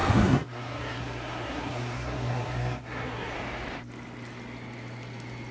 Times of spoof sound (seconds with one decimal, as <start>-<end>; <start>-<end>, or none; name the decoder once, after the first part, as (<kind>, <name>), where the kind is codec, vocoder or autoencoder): 0.0-3.3 (codec, SNAC)